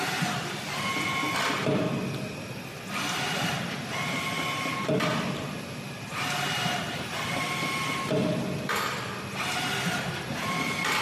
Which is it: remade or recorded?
recorded